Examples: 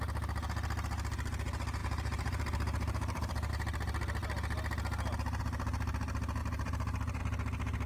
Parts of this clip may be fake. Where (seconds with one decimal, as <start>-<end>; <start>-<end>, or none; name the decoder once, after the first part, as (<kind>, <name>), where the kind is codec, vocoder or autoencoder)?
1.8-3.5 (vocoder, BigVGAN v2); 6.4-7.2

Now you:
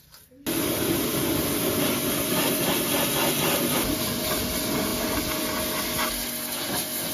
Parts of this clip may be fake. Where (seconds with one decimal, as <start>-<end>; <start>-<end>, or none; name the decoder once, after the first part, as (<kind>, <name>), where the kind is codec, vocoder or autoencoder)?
none

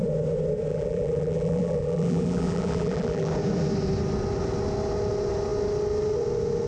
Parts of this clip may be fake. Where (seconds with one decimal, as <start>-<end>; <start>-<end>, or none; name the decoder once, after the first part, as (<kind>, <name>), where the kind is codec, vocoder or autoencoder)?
0.7-3.3 (vocoder, BigVGAN v2)

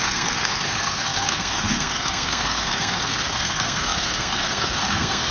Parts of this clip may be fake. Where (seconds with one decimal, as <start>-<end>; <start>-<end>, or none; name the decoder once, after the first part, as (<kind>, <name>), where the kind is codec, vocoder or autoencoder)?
0.0-5.3 (codec, SNAC)

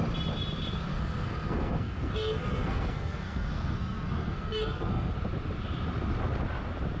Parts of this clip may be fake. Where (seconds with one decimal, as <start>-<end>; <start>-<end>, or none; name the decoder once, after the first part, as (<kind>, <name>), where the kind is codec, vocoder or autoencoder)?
0.9-5.1 (codec, SNAC)

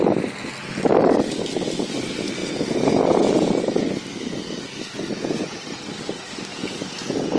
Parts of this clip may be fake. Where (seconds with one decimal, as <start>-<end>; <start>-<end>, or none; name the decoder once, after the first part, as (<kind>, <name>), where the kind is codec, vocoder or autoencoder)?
2.4-3.7 (vocoder, Vocos); 5.1-5.8; 6.5-7.4

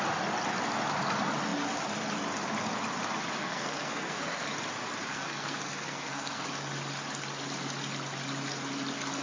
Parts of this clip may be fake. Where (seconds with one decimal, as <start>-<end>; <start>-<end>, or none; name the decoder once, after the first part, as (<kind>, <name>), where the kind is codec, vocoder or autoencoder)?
3.4-4.5 (codec, SNAC); 5.1-6.4